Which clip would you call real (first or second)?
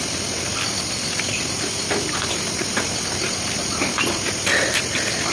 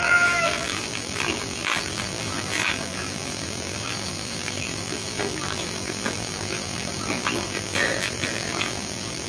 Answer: first